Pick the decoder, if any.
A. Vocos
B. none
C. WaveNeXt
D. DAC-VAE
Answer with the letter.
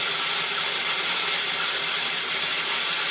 B